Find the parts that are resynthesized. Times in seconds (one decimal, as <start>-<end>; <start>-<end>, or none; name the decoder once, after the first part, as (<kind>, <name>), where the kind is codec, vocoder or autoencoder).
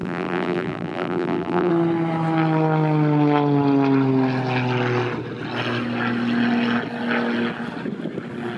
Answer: 0.0-1.7 (vocoder, BigVGAN v2)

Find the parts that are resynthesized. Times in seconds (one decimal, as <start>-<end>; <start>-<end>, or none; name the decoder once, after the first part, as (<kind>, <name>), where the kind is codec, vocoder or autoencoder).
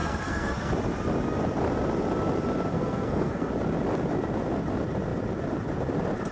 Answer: 0.0-0.7 (codec, SNAC); 2.7-3.5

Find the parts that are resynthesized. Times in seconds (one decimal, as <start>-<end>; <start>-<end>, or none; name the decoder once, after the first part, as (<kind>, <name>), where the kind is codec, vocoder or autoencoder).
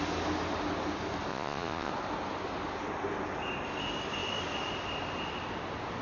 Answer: 1.3-1.9 (vocoder, Vocos)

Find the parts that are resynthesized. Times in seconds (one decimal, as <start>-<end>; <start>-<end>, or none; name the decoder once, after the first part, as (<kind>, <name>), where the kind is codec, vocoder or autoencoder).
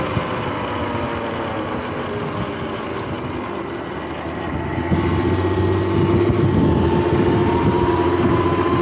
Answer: none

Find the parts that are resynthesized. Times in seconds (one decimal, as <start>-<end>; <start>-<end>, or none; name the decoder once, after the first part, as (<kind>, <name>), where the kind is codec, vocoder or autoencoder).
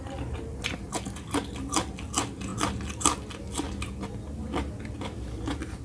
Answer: none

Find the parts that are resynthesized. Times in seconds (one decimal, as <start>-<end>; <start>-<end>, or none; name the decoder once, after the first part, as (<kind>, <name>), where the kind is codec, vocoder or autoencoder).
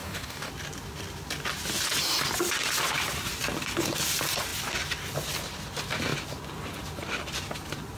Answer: 0.0-0.5 (codec, DAC)